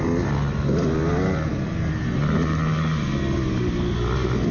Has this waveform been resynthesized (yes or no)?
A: no